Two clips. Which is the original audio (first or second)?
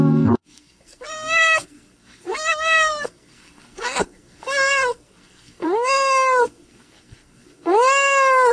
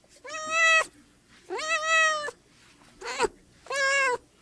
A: second